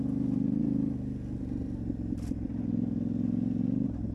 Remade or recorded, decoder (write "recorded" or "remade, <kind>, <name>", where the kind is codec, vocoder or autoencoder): recorded